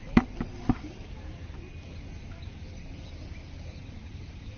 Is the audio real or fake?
real